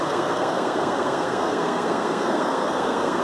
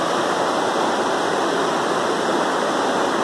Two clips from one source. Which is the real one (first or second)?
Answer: second